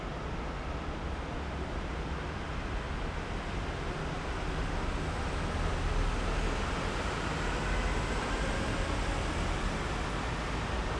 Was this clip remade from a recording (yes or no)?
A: no